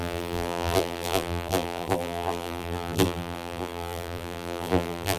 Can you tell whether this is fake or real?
fake